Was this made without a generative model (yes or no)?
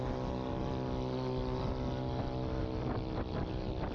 yes